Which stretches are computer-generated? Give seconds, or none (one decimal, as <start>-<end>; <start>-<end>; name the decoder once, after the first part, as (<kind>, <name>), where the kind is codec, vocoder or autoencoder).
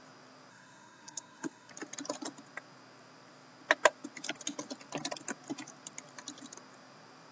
0.5-1.7 (codec, SNAC)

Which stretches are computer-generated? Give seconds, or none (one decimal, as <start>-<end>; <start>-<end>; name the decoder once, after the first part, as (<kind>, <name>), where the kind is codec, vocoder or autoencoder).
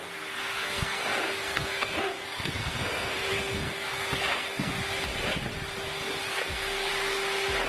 0.0-4.7 (codec, SNAC); 6.2-6.9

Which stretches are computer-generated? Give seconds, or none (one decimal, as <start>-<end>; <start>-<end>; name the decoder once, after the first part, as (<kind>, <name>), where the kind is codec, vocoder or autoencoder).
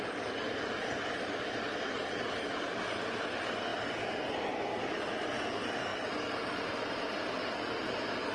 none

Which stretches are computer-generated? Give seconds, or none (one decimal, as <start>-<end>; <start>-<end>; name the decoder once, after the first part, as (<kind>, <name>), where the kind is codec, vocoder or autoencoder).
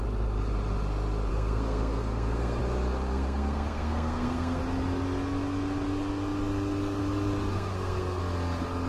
1.3-2.6 (codec, SNAC); 3.1-4.6; 7.5-8.2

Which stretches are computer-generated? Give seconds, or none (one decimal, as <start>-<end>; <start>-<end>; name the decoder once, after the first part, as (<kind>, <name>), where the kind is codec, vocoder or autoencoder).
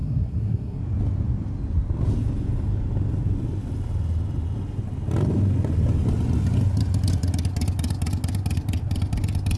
0.0-0.8 (codec, SNAC)